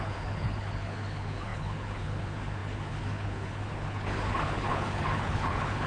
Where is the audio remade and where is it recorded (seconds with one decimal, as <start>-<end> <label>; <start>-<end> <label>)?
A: 0.0-5.9 remade